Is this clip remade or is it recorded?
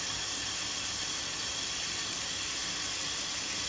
recorded